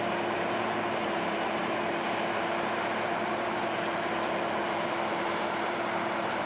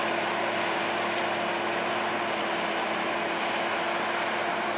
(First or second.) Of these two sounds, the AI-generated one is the first